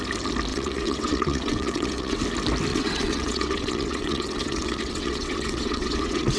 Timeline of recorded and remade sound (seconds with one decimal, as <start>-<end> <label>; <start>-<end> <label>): 0.0-0.5 recorded; 0.5-2.2 remade; 2.2-2.7 recorded; 2.7-6.4 remade